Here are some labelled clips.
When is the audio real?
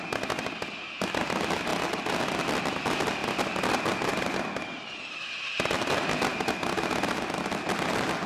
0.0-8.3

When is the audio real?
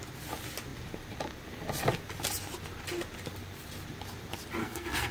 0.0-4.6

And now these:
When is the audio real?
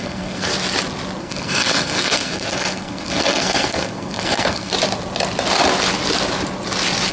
0.5-1.2; 4.7-7.1